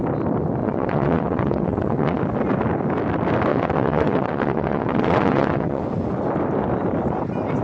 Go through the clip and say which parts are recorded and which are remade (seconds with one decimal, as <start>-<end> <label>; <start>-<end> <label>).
0.0-0.6 recorded; 0.6-2.2 remade; 2.2-3.5 recorded; 3.5-5.8 remade; 5.8-7.6 recorded